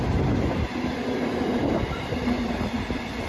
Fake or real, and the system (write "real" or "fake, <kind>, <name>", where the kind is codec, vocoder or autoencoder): real